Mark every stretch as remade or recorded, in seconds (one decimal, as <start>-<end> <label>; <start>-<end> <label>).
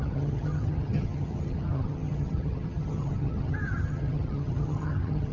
0.0-5.3 remade